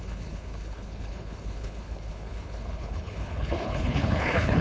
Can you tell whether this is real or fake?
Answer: fake